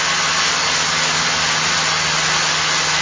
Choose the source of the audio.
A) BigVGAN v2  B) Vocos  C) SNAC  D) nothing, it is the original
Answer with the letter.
D